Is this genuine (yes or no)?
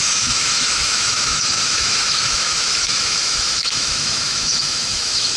no